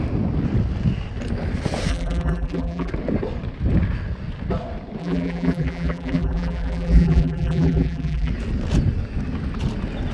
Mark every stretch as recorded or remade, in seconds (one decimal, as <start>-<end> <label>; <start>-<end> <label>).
0.0-1.9 recorded; 1.9-2.9 remade; 2.9-5.0 recorded; 5.0-8.3 remade; 8.3-10.1 recorded